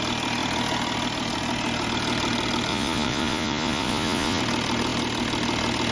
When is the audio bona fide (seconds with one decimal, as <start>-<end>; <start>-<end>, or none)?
0.0-2.7; 4.4-5.9